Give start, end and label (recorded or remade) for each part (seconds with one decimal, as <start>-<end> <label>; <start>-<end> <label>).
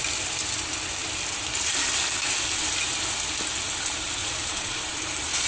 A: 0.0-4.2 recorded; 4.2-4.8 remade; 4.8-5.5 recorded